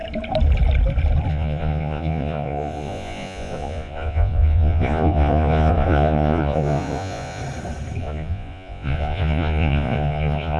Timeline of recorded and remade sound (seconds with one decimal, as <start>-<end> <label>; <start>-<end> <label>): 0.0-1.3 recorded; 1.3-7.4 remade; 7.4-8.0 recorded; 8.0-10.6 remade